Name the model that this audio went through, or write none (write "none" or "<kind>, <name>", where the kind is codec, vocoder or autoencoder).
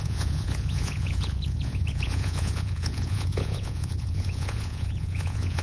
vocoder, Vocos